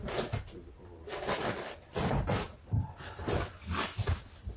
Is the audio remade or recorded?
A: recorded